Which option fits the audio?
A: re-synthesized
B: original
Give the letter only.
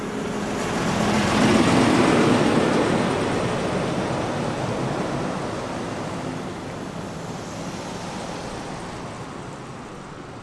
B